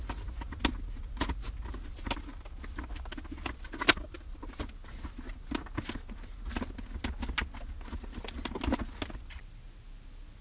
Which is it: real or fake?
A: real